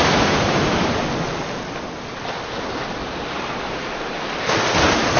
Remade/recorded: recorded